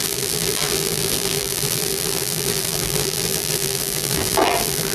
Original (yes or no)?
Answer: no